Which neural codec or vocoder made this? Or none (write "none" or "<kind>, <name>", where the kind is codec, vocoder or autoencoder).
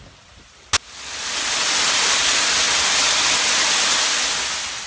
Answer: none